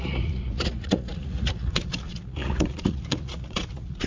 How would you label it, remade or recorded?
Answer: remade